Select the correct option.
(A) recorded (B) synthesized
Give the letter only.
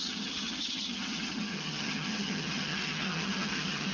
B